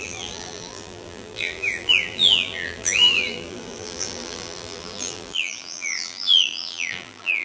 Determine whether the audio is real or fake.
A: fake